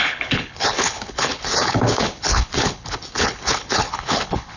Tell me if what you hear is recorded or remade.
remade